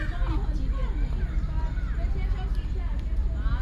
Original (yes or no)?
yes